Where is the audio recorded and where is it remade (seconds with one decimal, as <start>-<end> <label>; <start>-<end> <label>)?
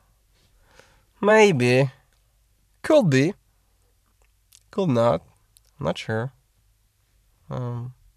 0.0-8.2 recorded